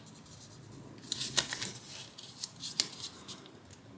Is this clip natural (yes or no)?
yes